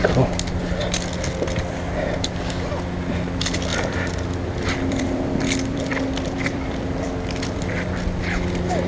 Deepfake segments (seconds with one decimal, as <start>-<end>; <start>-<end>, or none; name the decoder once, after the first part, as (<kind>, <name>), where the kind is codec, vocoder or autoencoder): 3.7-8.2 (vocoder, BigVGAN v2)